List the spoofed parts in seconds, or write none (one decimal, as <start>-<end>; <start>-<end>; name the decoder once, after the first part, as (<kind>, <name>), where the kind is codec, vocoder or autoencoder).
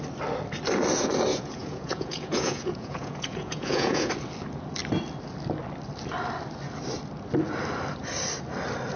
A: 1.3-4.1 (vocoder, Vocos)